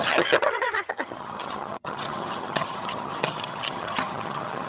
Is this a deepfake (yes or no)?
yes